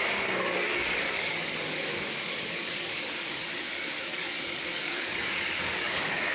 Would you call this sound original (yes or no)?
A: no